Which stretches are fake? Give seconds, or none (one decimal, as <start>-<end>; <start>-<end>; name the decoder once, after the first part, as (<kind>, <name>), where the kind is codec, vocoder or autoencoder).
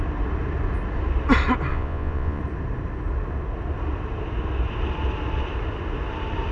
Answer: 1.7-2.4 (vocoder, Vocos)